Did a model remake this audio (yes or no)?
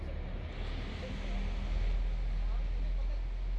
no